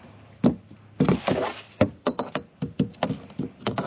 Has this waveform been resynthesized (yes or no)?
no